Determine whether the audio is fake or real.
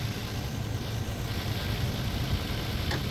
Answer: real